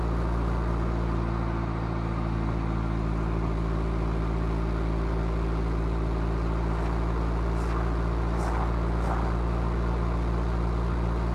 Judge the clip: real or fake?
real